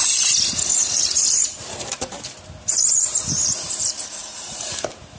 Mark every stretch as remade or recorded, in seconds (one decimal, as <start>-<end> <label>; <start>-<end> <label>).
0.0-0.7 recorded; 0.7-3.8 remade; 3.8-4.2 recorded; 4.2-5.2 remade